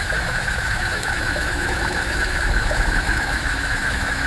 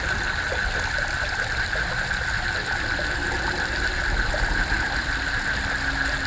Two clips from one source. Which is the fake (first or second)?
first